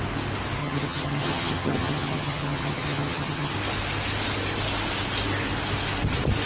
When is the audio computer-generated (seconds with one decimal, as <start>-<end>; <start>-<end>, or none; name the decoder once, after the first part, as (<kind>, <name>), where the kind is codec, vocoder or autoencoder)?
0.6-3.5 (vocoder, HiFi-GAN)